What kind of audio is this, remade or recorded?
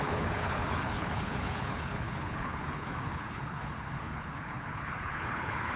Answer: remade